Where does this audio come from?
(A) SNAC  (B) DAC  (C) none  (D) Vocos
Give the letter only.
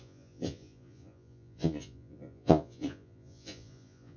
D